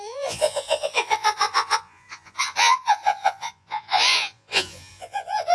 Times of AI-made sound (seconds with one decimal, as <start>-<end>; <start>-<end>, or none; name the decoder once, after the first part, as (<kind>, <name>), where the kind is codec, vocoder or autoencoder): 0.0-5.5 (vocoder, Vocos)